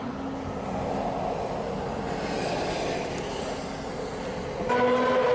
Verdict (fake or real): real